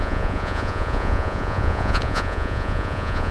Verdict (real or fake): fake